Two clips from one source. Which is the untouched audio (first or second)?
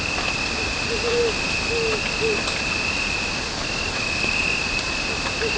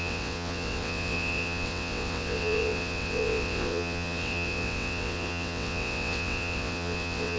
first